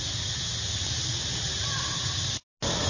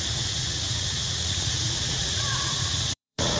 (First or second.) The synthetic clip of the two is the second